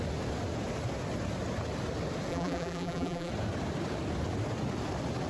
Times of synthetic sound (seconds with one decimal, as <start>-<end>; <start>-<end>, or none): 2.3-3.3